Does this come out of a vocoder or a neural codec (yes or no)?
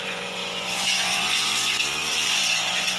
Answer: yes